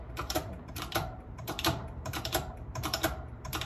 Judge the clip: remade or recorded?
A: remade